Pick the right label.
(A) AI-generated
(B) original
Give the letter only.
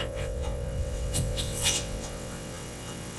A